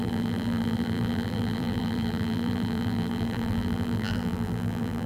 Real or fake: fake